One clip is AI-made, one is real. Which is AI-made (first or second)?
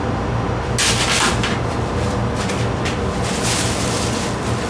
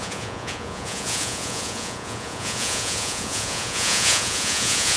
second